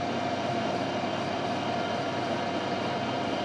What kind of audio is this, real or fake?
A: real